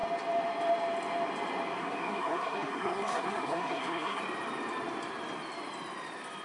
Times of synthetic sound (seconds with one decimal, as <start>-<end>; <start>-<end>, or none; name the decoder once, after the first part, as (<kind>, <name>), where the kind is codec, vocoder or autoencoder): 1.8-4.2 (codec, SNAC)